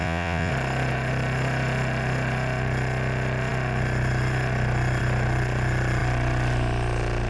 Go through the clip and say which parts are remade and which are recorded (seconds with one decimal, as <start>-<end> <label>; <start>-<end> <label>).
0.0-0.5 remade; 0.5-7.3 recorded

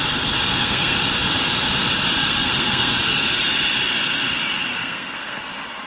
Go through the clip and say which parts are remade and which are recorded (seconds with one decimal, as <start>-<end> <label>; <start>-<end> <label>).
0.0-0.5 recorded; 0.5-1.0 remade; 1.0-2.2 recorded; 2.2-2.9 remade; 2.9-4.8 recorded; 4.8-5.4 remade; 5.4-5.9 recorded

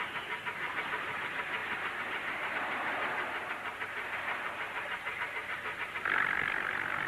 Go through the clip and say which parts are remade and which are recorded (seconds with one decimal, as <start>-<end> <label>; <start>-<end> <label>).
0.0-7.1 recorded

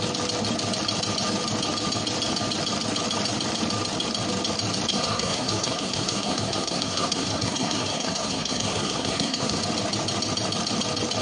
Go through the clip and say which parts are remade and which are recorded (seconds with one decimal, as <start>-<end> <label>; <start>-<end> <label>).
0.0-4.9 recorded; 4.9-9.6 remade; 9.6-11.2 recorded

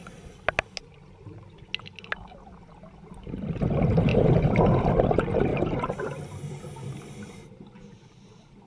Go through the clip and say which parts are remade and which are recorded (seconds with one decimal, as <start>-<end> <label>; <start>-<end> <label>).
0.0-4.1 recorded; 4.1-4.6 remade; 4.6-5.5 recorded; 5.5-6.1 remade; 6.1-8.7 recorded